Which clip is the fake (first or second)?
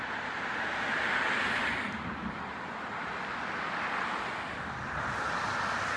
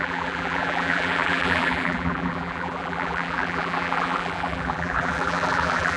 second